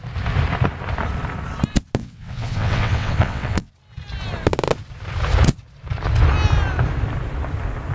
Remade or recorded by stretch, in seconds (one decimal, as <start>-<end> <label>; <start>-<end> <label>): 0.0-2.0 recorded; 2.0-3.7 remade; 3.7-7.9 recorded